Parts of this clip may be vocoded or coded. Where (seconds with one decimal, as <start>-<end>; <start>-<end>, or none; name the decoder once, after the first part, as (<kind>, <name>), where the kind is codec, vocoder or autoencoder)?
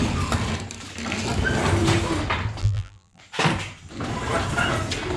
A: 2.6-3.2 (vocoder, BigVGAN v2)